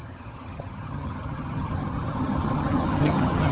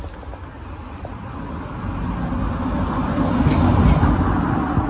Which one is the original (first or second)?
second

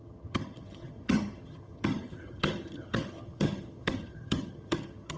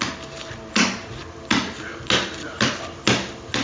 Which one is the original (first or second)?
second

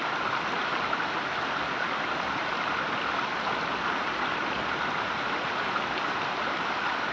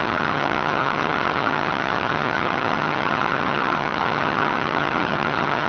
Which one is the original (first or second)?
first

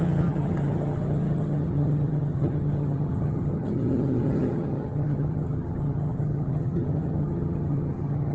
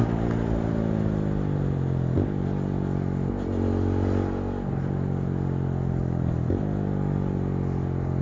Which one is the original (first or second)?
second